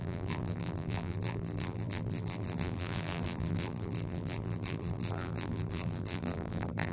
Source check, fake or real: fake